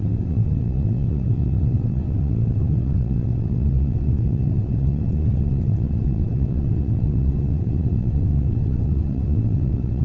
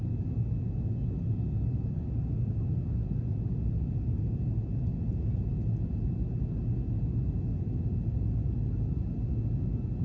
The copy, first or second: first